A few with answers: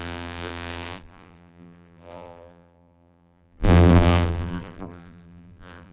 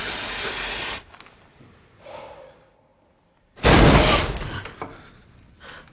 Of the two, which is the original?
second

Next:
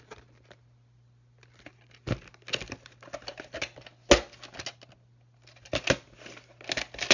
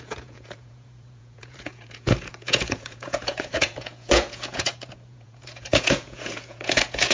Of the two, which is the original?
first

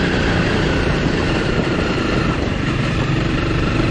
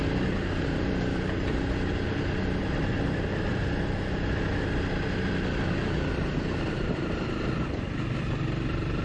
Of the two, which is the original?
second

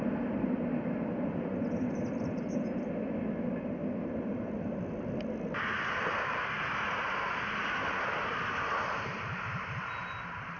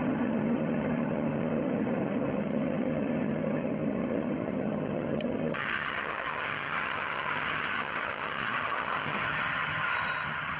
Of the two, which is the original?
first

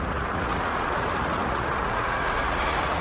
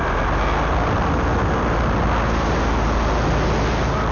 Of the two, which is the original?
second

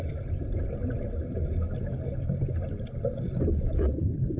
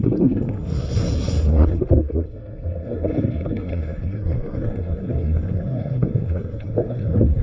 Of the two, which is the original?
first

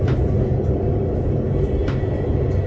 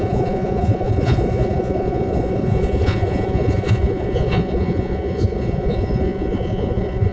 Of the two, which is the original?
first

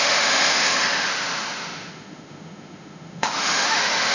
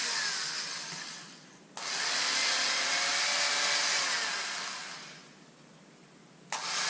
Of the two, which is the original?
second